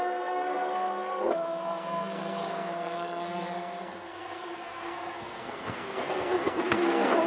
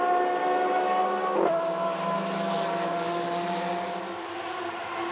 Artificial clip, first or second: first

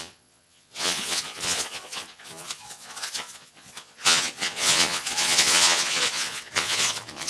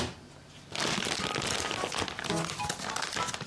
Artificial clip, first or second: first